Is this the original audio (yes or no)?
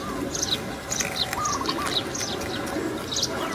yes